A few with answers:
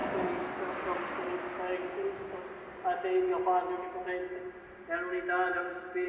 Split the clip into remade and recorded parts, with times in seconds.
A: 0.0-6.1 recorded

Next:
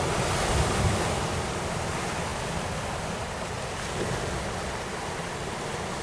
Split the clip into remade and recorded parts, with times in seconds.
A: 0.0-6.0 recorded

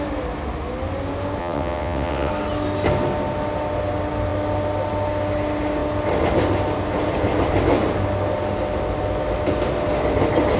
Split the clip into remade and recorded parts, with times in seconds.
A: 0.0-1.4 recorded; 1.4-2.3 remade; 2.3-10.6 recorded

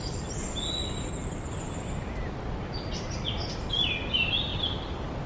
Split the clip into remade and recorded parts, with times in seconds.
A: 0.0-1.2 recorded; 1.2-1.8 remade; 1.8-4.5 recorded; 4.5-5.3 remade